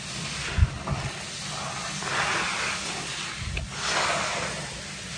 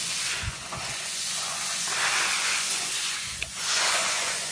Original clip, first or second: first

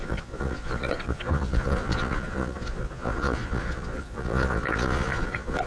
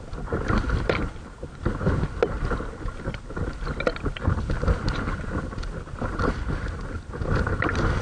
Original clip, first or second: second